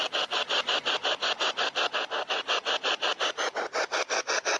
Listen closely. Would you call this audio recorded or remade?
recorded